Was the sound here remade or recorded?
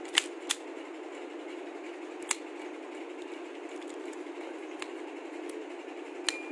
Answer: recorded